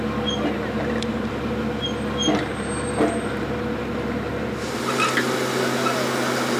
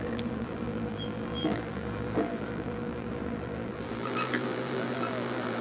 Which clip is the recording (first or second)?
first